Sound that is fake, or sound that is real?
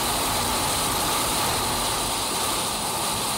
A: fake